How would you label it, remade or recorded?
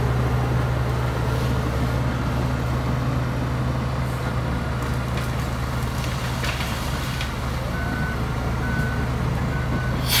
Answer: recorded